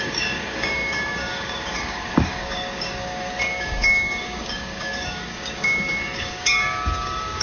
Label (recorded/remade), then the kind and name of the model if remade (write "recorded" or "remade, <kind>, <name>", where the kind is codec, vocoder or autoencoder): remade, codec, DAC